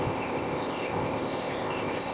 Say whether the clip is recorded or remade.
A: remade